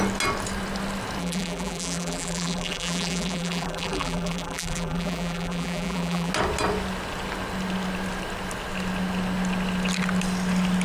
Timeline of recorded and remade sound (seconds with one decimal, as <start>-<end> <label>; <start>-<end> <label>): 0.0-1.2 recorded; 1.2-6.3 remade; 6.3-10.8 recorded